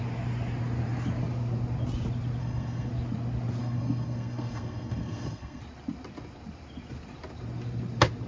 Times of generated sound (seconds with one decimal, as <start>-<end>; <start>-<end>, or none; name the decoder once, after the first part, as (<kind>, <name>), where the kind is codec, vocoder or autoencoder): 2.4-2.9 (codec, SNAC); 3.6-5.6